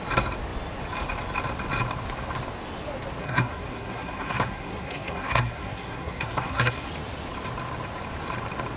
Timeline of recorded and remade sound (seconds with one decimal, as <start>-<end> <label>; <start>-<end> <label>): 0.0-3.2 recorded; 3.2-6.9 remade; 6.9-8.8 recorded